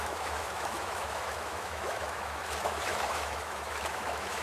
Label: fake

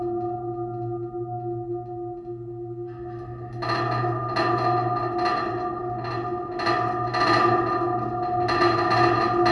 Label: real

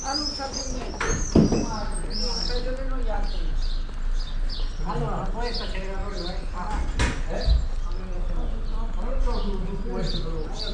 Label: real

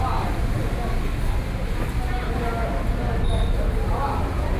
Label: real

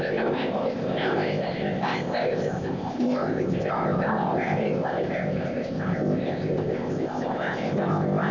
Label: fake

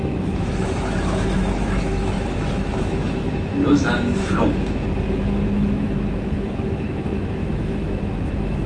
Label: fake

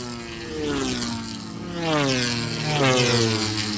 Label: real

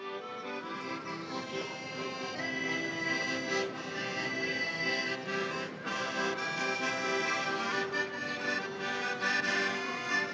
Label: real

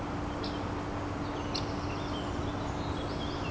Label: real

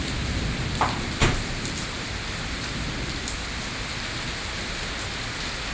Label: real